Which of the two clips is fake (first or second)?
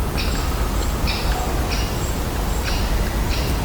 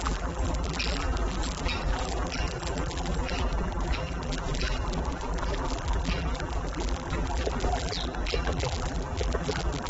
second